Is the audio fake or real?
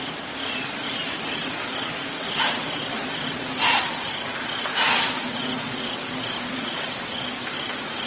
real